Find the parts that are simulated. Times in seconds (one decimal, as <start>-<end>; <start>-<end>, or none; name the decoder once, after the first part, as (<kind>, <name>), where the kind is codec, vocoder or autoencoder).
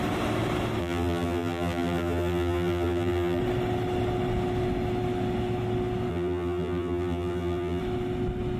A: 0.8-3.4 (vocoder, BigVGAN v2); 6.1-7.8